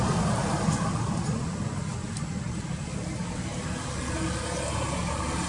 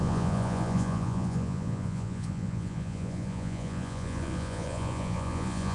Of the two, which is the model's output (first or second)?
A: second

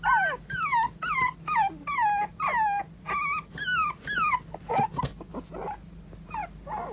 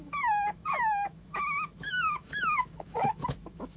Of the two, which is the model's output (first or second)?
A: second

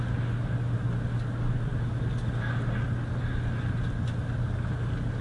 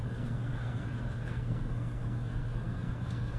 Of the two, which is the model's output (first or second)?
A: second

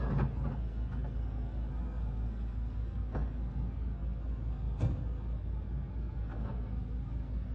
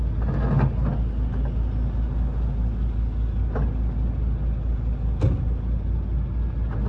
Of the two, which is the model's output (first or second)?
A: first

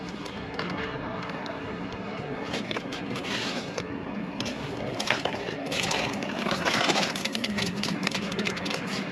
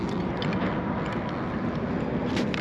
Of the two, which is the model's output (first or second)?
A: first